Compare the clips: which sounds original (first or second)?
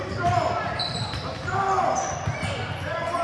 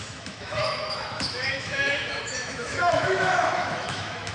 first